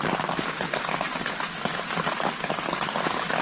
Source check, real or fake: real